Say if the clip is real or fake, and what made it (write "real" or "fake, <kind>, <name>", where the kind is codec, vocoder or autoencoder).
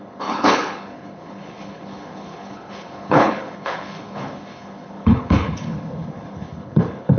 fake, codec, HILCodec